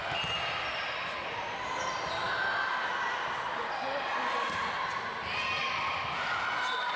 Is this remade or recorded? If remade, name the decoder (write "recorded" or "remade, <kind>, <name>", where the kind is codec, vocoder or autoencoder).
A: remade, vocoder, BigVGAN v2